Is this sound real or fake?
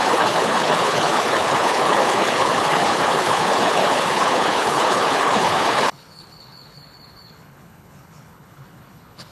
fake